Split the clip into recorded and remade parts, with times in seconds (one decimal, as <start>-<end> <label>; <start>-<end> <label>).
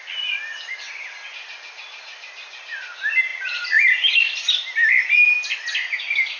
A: 0.0-6.4 recorded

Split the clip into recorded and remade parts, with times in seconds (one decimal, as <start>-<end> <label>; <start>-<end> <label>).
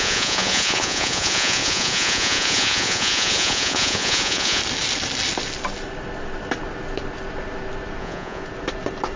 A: 0.0-4.6 remade; 4.6-8.0 recorded; 8.0-8.4 remade; 8.4-9.2 recorded